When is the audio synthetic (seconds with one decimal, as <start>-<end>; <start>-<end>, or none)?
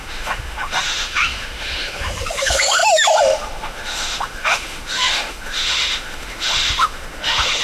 0.0-7.6